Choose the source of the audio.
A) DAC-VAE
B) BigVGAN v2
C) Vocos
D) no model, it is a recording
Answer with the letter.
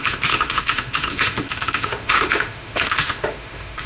A